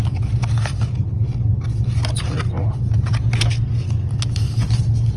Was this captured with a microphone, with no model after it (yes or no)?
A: yes